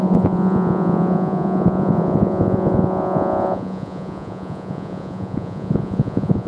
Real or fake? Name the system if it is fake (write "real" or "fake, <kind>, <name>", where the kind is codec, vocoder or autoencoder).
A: fake, vocoder, Vocos